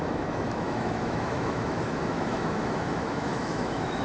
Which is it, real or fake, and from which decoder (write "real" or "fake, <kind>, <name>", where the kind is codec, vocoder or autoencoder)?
fake, autoencoder, DAC-VAE